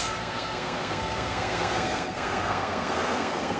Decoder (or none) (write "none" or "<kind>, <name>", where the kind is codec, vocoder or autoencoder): codec, SNAC